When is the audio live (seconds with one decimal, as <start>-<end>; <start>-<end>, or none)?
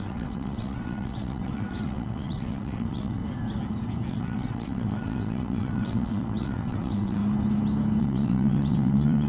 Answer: 3.2-4.1; 7.2-8.0